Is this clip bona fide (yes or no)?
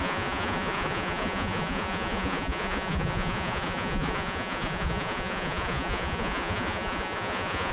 no